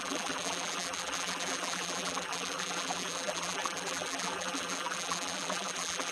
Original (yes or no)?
no